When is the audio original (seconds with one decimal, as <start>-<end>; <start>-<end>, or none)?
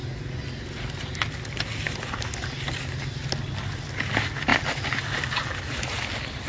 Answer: 0.0-6.5